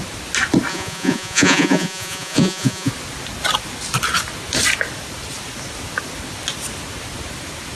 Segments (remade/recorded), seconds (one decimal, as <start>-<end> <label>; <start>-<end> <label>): 0.0-0.7 recorded; 0.7-2.9 remade; 2.9-7.8 recorded